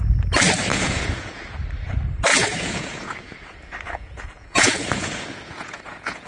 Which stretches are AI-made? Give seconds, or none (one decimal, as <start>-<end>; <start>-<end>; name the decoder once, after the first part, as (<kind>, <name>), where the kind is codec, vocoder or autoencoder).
0.7-1.5 (vocoder, Vocos); 2.3-6.3